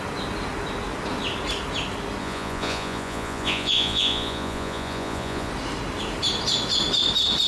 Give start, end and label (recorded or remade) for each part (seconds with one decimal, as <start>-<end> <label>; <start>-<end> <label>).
0.0-2.2 recorded; 2.2-5.5 remade; 5.5-7.5 recorded